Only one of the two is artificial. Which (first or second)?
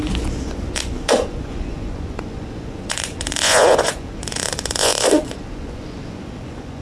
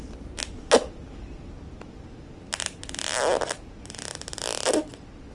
first